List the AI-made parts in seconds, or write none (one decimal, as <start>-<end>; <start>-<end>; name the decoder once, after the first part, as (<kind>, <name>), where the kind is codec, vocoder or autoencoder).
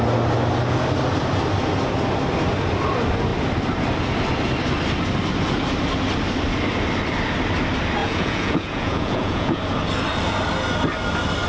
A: 8.0-9.6 (vocoder, Vocos)